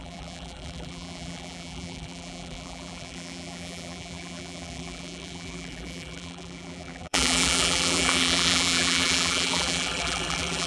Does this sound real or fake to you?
fake